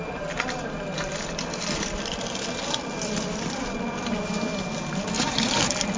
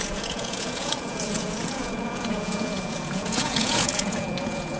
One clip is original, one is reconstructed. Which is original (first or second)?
first